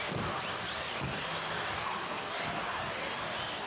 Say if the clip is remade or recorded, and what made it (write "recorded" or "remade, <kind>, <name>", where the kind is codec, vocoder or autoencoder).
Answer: recorded